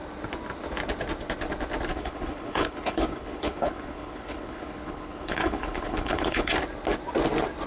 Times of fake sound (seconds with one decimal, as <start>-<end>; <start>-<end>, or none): 1.9-6.5